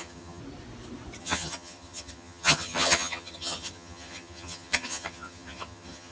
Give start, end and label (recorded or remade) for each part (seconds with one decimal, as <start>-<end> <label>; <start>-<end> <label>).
0.0-0.4 remade; 0.4-1.2 recorded; 1.2-6.1 remade